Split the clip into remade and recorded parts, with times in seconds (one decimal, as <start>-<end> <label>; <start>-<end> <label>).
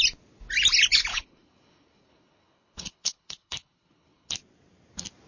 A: 0.0-1.1 recorded; 1.1-4.3 remade; 4.3-5.3 recorded